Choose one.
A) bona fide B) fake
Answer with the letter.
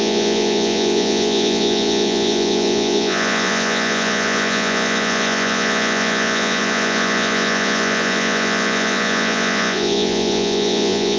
B